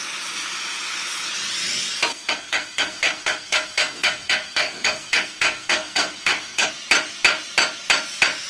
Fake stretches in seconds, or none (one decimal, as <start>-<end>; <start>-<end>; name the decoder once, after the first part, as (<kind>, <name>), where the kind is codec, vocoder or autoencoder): 2.1-6.7 (codec, SNAC)